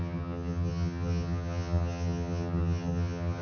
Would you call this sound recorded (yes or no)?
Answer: no